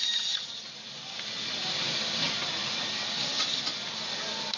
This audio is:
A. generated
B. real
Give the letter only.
B